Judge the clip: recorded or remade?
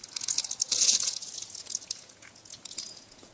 remade